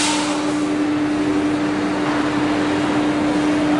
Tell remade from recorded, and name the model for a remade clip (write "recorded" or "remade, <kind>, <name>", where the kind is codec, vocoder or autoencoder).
recorded